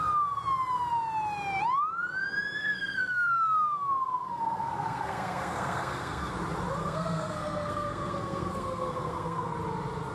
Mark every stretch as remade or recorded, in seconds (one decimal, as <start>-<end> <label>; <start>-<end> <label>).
0.0-2.6 recorded; 2.6-6.3 remade; 6.3-6.8 recorded; 6.8-9.5 remade; 9.5-10.1 recorded